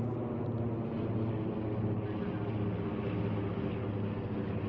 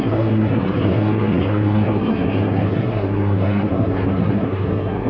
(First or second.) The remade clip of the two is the second